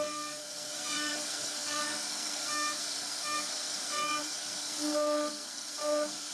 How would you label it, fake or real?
fake